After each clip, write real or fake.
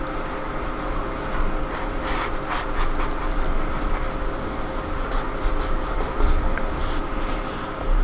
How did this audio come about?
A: real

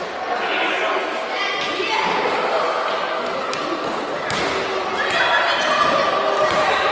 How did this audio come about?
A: real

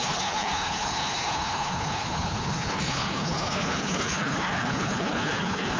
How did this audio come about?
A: fake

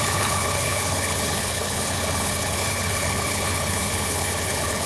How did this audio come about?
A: fake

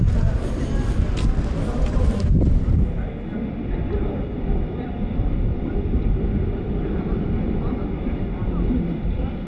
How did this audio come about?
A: real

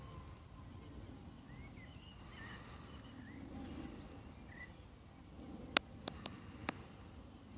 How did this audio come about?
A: real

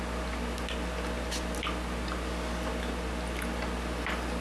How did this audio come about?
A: real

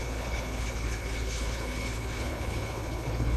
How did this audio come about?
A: fake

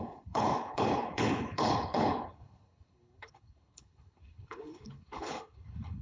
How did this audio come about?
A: fake